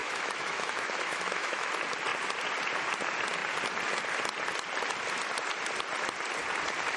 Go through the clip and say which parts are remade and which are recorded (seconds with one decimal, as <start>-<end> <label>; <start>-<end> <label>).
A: 0.0-1.7 remade; 1.7-7.0 recorded